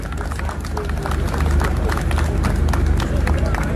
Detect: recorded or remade recorded